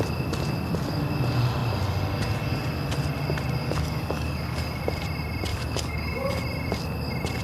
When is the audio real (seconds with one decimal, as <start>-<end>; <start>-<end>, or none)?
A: 0.0-3.6; 4.8-5.5; 6.4-7.4